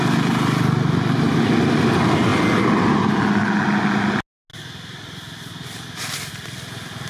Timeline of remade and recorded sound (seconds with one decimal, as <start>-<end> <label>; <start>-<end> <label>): 0.0-7.1 recorded